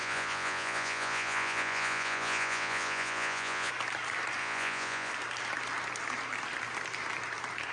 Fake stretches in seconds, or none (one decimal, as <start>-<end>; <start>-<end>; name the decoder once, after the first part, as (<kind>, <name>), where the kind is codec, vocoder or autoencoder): 0.0-3.7 (vocoder, Vocos); 4.4-5.1